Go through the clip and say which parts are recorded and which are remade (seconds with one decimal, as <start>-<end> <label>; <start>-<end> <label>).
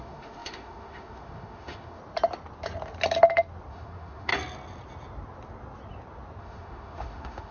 0.0-2.0 remade; 2.0-3.7 recorded; 3.7-4.3 remade; 4.3-6.4 recorded; 6.4-7.5 remade